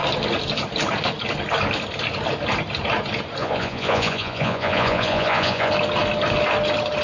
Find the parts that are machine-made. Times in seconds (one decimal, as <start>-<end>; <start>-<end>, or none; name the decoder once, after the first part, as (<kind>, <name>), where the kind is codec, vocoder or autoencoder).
3.4-5.7 (vocoder, Vocos)